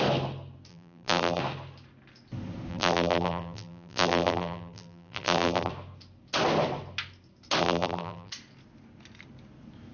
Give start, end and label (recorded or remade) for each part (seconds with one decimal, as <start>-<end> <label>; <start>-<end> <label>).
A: 0.0-0.7 recorded; 0.7-1.4 remade; 1.4-2.7 recorded; 2.7-5.7 remade; 5.7-7.6 recorded; 7.6-8.3 remade; 8.3-9.9 recorded